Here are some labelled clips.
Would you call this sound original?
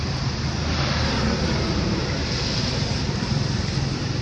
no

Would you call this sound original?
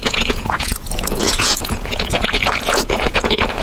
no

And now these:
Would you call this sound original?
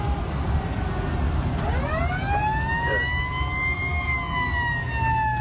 yes